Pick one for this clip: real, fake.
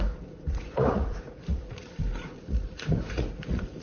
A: fake